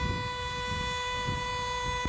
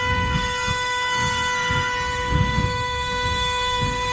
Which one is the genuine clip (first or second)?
first